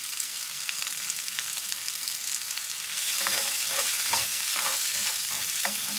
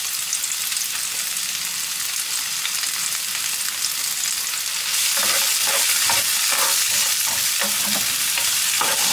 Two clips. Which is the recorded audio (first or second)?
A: second